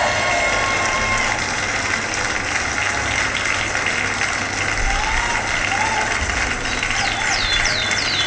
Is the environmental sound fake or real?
real